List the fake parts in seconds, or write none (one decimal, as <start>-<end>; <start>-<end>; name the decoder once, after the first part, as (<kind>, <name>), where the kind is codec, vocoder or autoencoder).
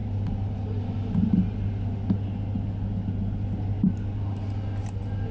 none